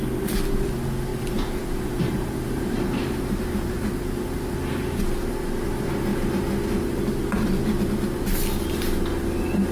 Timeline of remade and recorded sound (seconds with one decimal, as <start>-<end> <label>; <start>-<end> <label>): 0.0-1.1 recorded; 1.1-5.0 remade; 5.0-9.7 recorded